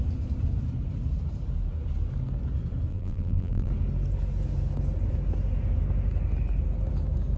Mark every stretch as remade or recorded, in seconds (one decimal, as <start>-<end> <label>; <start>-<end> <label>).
0.0-2.9 recorded; 2.9-3.7 remade; 3.7-7.4 recorded